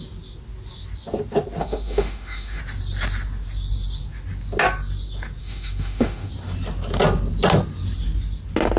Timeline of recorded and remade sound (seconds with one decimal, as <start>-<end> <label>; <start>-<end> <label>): 0.0-1.6 recorded; 1.6-2.6 remade; 2.6-5.4 recorded; 5.4-6.3 remade; 6.3-8.8 recorded

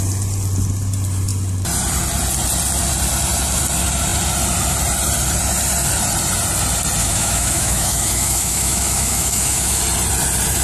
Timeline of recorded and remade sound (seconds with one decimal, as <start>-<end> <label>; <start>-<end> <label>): 0.0-7.0 recorded; 7.0-9.8 remade; 9.8-10.6 recorded

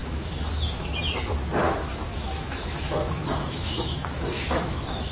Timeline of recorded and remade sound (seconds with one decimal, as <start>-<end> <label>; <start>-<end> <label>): 0.0-0.5 remade; 0.5-1.8 recorded; 1.8-5.1 remade

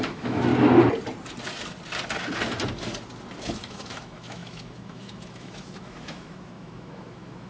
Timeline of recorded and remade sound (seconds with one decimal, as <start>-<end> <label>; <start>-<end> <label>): 0.0-0.5 remade; 0.5-3.4 recorded; 3.4-7.5 remade

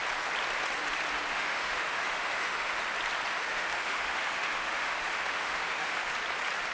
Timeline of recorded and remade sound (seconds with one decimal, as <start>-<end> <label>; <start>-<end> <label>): 0.0-1.3 recorded; 1.3-2.8 remade; 2.8-3.3 recorded; 3.3-6.1 remade; 6.1-6.7 recorded

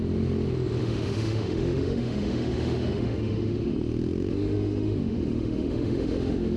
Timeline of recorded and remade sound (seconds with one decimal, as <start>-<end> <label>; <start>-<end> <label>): 0.0-0.8 recorded; 0.8-3.7 remade; 3.7-4.3 recorded; 4.3-6.6 remade